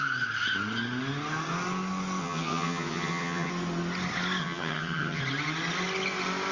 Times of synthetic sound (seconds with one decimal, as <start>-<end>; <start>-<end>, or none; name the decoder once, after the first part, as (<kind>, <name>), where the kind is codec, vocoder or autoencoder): 2.2-3.5 (vocoder, HiFi-GAN); 4.4-5.2